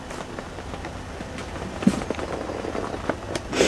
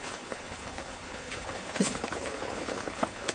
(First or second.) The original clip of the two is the first